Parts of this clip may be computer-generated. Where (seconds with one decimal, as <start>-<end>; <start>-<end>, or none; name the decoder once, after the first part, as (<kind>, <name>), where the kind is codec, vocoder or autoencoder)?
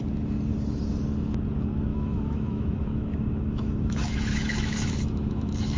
1.9-5.8 (autoencoder, DAC-VAE)